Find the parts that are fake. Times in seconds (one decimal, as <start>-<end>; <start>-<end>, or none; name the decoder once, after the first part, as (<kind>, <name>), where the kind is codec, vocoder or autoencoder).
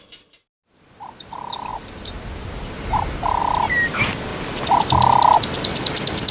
none